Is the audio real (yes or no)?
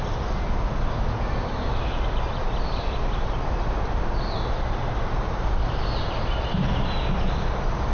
yes